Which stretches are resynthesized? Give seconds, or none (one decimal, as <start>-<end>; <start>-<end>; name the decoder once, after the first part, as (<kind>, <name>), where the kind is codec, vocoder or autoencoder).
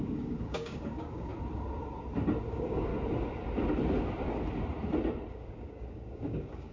0.0-1.3 (codec, DAC); 2.5-2.9; 5.3-6.7